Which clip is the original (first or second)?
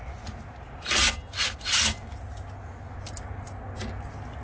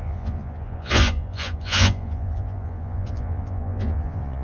first